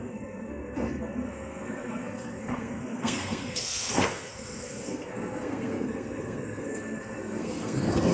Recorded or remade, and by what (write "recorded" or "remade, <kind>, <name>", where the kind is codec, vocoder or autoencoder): remade, codec, SNAC